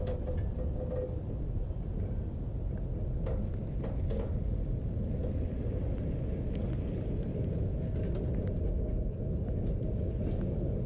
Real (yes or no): yes